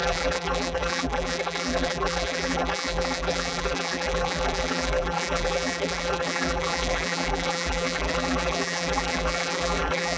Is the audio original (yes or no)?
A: no